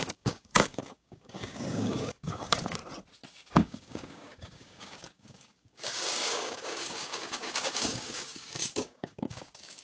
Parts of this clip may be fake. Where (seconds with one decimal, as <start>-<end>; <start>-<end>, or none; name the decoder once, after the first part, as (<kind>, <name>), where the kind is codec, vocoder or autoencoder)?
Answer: 0.0-2.8 (codec, DAC); 3.3-9.8